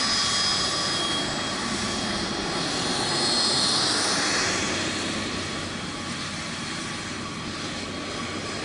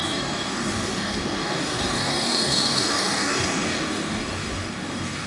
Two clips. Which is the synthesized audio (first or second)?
second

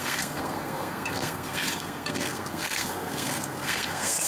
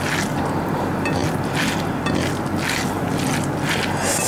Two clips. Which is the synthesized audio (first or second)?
first